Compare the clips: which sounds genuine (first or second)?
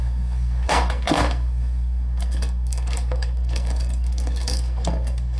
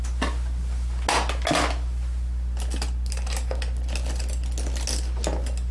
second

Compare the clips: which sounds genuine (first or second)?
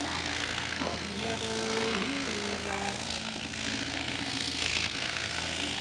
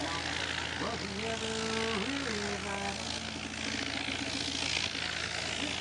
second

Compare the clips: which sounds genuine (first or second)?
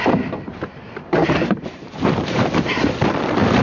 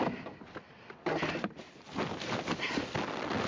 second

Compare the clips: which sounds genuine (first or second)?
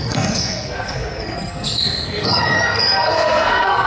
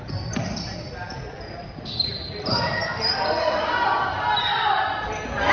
second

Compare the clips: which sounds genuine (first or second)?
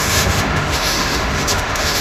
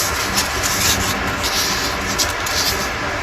second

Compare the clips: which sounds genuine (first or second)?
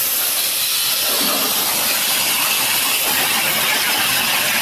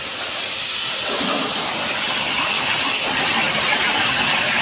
first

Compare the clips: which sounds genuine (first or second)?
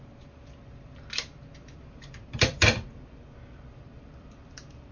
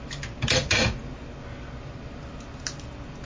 second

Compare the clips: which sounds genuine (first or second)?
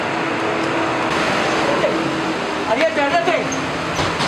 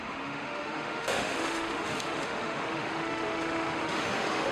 first